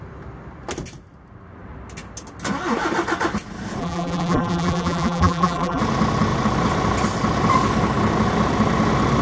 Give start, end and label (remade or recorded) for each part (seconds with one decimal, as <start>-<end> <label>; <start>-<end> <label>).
0.0-3.8 recorded; 3.8-5.8 remade; 5.8-9.2 recorded

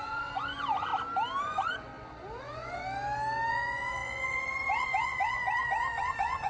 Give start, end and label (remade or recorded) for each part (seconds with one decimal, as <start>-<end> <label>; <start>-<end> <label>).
0.0-0.9 remade; 0.9-1.4 recorded; 1.4-1.9 remade; 1.9-2.4 recorded; 2.4-2.8 remade; 2.8-3.5 recorded; 3.5-6.5 remade